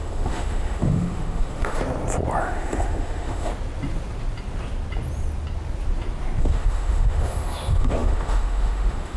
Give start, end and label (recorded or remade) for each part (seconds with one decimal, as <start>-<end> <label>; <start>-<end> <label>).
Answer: 0.0-1.8 remade; 1.8-2.4 recorded; 2.4-3.5 remade; 3.5-6.4 recorded; 6.4-9.2 remade